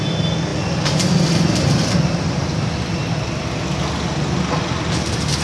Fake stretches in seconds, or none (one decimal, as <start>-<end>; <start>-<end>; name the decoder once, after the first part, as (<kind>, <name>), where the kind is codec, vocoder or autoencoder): none